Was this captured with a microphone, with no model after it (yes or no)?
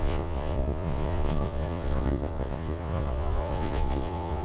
no